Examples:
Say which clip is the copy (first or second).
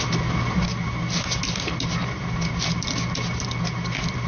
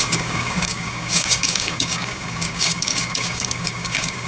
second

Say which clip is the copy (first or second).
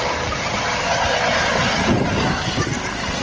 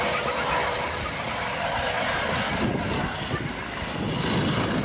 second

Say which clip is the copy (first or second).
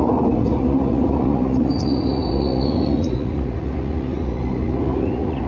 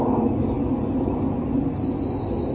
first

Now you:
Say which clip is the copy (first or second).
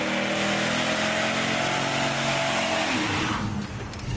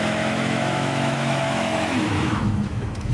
second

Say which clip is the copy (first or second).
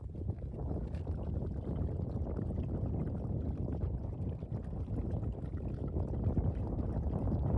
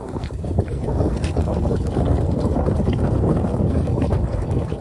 second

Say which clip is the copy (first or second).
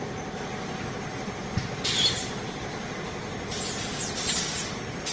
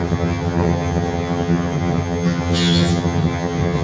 second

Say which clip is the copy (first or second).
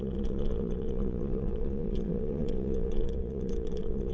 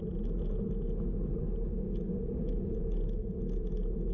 first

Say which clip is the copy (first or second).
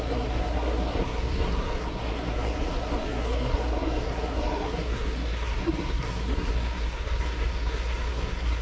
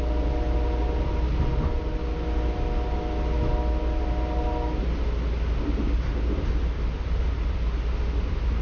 first